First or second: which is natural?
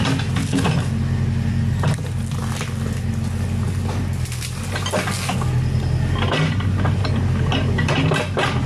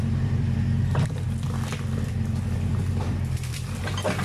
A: first